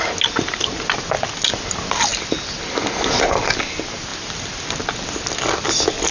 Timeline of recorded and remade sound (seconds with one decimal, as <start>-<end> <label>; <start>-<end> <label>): 0.0-6.1 recorded